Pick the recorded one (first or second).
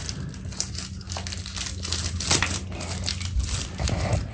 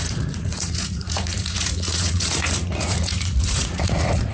first